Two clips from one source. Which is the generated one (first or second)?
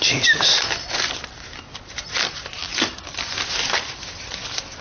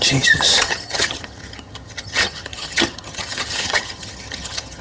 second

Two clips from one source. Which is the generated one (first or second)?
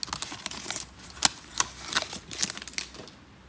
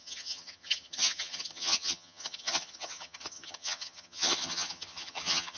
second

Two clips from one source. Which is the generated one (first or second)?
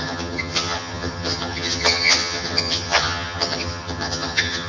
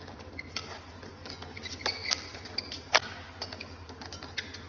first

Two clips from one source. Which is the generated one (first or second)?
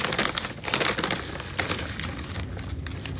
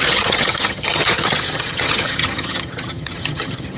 second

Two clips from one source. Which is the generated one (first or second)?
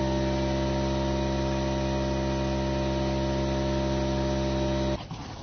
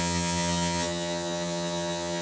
second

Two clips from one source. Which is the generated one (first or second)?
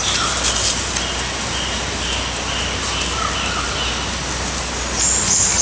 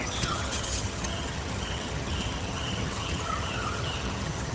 second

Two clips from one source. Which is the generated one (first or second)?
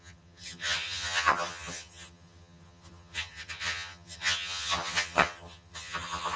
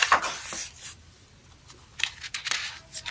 first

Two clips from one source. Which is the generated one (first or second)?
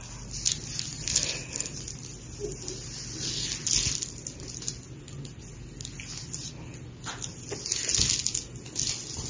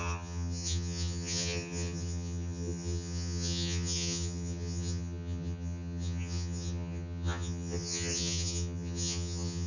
second